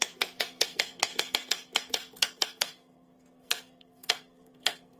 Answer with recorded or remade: remade